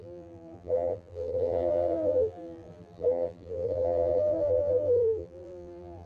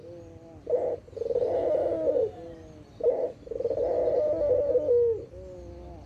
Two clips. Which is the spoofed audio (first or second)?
first